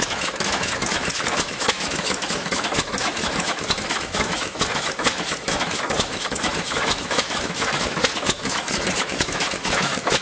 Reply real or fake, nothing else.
fake